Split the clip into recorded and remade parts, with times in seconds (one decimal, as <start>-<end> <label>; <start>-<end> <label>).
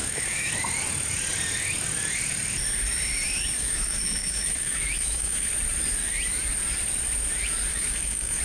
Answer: 0.0-0.5 remade; 0.5-3.6 recorded; 3.6-5.5 remade; 5.5-7.7 recorded; 7.7-8.4 remade